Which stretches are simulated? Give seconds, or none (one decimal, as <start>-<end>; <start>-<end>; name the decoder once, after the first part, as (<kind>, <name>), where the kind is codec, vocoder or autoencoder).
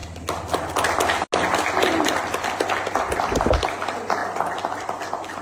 none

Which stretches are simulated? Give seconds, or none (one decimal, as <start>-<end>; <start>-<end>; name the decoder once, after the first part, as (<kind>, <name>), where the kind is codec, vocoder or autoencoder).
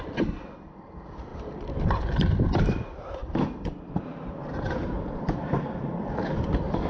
0.0-1.3 (vocoder, BigVGAN v2); 2.3-3.2; 3.7-6.9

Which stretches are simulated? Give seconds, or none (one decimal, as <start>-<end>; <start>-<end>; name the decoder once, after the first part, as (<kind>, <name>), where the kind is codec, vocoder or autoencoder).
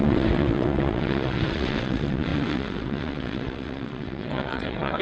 0.0-5.0 (vocoder, WaveNeXt)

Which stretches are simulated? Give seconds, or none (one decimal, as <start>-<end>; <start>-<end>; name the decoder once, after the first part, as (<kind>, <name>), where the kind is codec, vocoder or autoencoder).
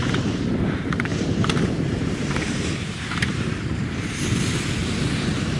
1.1-4.5 (vocoder, BigVGAN v2)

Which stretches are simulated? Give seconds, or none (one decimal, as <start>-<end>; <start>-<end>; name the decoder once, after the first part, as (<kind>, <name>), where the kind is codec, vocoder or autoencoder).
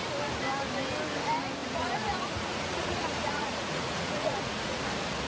1.6-4.8 (vocoder, Vocos)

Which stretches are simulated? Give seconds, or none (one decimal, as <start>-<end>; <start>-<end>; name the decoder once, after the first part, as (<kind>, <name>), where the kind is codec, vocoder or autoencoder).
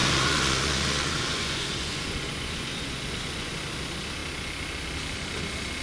0.0-3.5 (vocoder, Vocos)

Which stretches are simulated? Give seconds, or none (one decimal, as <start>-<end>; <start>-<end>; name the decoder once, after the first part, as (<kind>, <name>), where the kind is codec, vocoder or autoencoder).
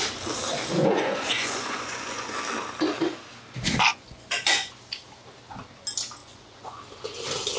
0.8-2.3 (vocoder, Vocos); 3.9-4.8; 6.2-6.8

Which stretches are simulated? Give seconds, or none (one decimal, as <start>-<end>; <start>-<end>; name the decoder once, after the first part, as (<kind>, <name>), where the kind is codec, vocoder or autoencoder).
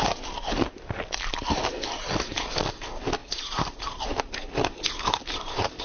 3.2-5.8 (vocoder, BigVGAN v2)